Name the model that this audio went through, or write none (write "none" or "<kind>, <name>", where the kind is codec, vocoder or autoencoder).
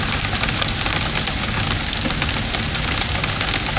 none